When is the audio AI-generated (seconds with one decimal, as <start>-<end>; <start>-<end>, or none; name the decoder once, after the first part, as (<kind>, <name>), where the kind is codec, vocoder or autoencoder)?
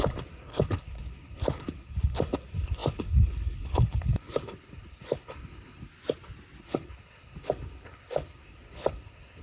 0.0-5.9 (codec, HILCodec); 6.6-9.4